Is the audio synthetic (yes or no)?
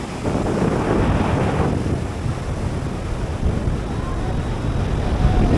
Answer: no